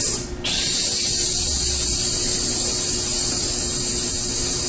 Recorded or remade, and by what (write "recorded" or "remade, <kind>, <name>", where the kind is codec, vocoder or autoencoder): recorded